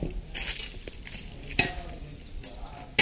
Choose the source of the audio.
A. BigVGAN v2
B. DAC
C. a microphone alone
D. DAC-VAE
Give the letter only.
C